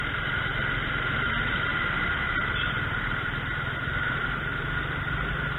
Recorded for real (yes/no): yes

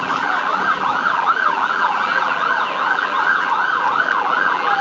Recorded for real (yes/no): no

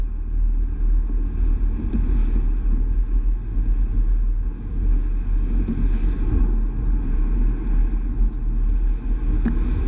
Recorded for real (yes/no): yes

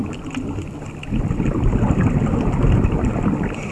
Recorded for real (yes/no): no